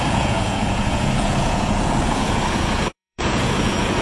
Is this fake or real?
fake